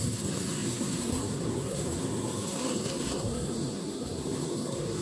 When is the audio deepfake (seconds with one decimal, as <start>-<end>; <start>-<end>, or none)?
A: 0.0-5.0